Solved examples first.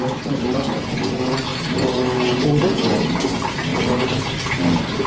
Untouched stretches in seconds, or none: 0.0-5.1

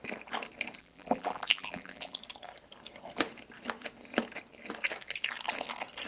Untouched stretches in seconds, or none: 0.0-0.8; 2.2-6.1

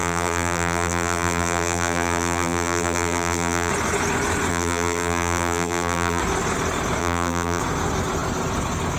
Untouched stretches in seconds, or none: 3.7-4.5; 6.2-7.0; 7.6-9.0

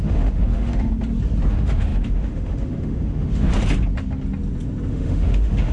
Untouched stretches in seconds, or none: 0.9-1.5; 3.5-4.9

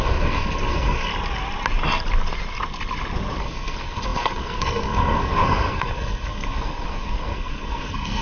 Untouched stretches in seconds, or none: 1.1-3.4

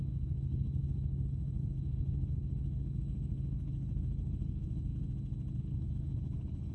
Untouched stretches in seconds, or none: 4.9-5.6

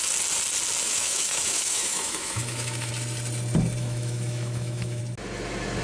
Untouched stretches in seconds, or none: 0.0-0.8; 2.9-3.8; 5.0-5.8

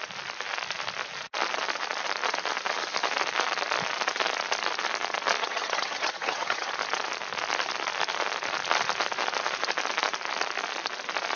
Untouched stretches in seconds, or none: 0.0-5.4; 6.7-11.4